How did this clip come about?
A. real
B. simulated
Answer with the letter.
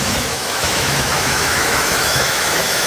B